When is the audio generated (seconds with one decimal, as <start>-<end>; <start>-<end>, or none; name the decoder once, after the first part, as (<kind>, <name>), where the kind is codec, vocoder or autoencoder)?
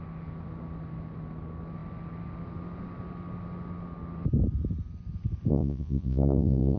5.5-6.8 (vocoder, Vocos)